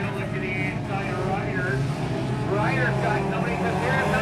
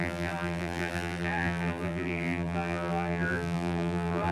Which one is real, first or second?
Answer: first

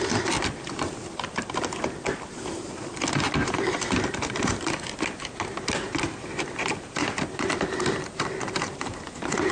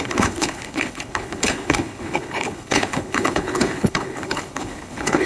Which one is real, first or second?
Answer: first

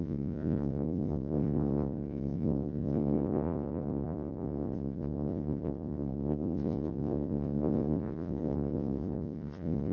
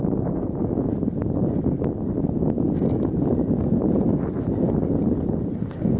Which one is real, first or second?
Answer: second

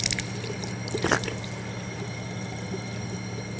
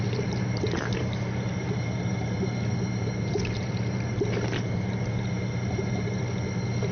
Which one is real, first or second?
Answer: first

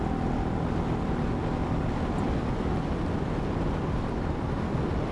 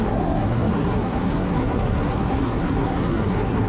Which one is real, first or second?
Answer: first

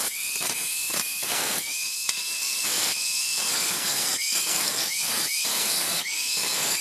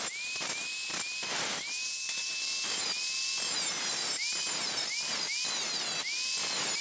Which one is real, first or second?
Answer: second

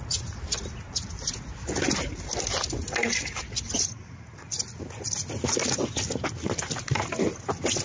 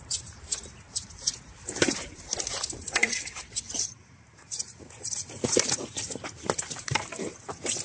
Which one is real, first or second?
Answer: first